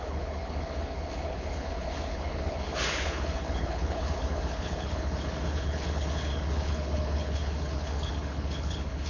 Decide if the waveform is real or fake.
fake